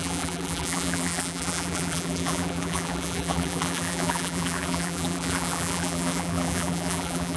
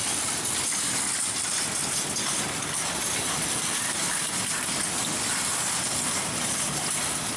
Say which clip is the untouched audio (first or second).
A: second